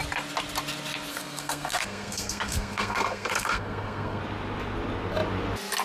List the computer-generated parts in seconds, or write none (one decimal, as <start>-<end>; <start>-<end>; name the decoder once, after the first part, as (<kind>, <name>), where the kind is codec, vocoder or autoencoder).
1.1-4.2 (codec, SNAC)

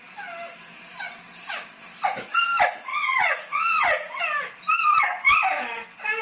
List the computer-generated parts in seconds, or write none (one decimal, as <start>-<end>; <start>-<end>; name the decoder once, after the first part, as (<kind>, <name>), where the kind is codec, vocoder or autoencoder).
2.9-4.2 (vocoder, Vocos)

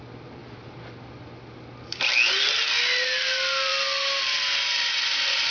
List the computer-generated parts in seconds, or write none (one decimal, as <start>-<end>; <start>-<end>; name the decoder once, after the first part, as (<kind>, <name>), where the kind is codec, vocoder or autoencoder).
none

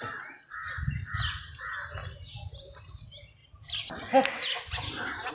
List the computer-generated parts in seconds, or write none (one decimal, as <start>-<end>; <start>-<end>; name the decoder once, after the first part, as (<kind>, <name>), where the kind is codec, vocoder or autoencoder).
none

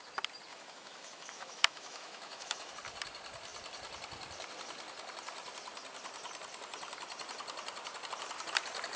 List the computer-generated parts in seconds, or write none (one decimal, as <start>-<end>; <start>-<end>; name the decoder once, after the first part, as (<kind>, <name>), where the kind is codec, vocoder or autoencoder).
0.5-2.7 (autoencoder, DAC-VAE)

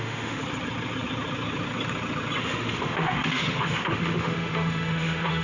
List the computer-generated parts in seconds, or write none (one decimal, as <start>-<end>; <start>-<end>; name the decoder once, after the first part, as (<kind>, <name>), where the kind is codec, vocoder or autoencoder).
0.0-0.4 (autoencoder, DAC-VAE); 2.4-5.4

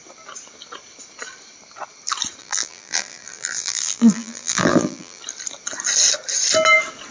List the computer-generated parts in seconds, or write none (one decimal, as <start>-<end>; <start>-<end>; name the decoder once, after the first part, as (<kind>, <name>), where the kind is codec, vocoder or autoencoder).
2.4-5.2 (vocoder, BigVGAN v2)